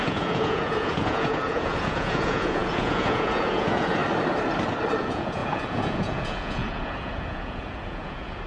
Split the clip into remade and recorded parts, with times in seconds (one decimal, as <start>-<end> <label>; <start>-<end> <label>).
0.0-4.0 remade; 4.0-5.0 recorded; 5.0-8.5 remade